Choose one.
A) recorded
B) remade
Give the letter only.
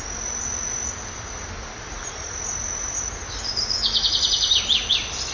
A